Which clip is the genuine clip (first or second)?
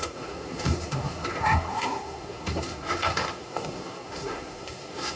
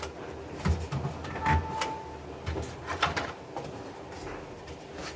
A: second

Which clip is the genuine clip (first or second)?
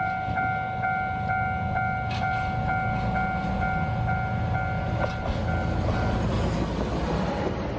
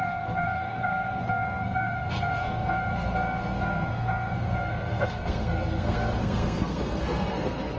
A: first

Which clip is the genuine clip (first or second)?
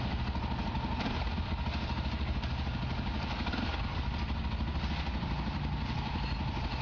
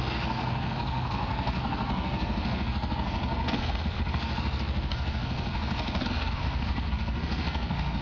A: first